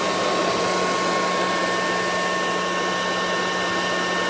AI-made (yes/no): no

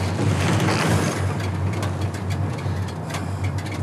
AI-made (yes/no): no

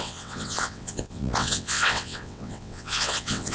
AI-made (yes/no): yes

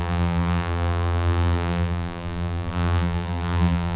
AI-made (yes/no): yes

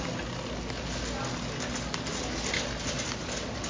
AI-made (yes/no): no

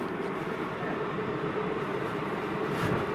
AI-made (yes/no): yes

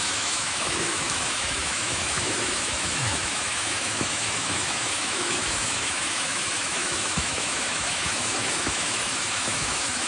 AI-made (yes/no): yes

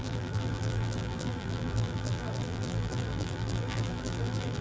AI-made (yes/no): yes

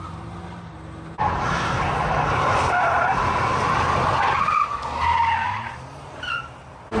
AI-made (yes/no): no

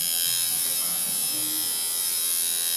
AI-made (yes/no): no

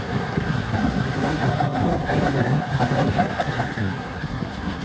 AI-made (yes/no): yes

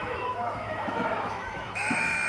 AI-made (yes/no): yes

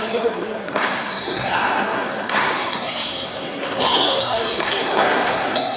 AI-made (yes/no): yes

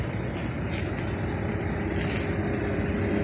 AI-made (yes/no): no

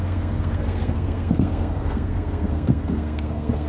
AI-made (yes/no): yes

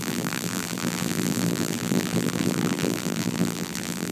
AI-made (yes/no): yes